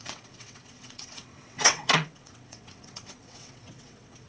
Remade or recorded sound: remade